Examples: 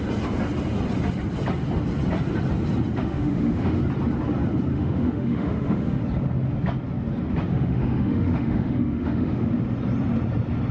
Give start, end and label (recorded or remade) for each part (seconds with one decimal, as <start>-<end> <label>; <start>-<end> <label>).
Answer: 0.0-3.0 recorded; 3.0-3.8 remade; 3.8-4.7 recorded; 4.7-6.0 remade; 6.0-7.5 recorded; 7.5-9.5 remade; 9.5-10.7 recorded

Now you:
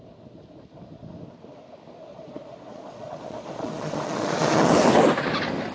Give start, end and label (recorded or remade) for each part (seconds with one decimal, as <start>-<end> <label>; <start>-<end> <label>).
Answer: 0.0-2.1 recorded; 2.1-4.7 remade; 4.7-5.7 recorded

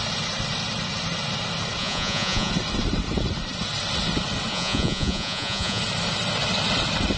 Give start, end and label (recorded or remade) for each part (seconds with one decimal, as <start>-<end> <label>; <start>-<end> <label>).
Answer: 0.0-1.8 recorded; 1.8-2.5 remade; 2.5-4.5 recorded; 4.5-5.8 remade; 5.8-7.2 recorded